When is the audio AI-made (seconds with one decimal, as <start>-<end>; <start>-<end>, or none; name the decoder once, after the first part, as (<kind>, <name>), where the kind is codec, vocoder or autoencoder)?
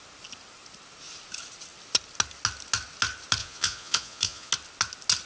3.4-4.5 (vocoder, Vocos)